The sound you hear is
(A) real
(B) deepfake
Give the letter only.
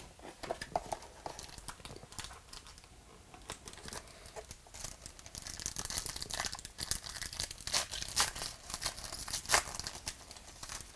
A